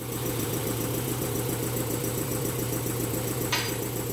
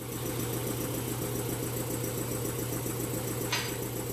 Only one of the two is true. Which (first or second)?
second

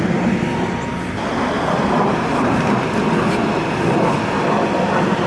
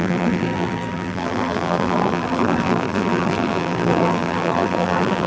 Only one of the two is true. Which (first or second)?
first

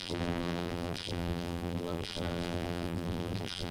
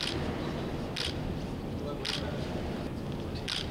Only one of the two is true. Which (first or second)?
second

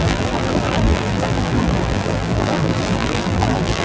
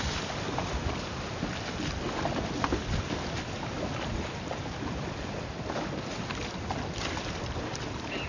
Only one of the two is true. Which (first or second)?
second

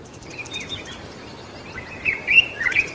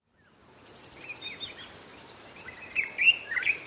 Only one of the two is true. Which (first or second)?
second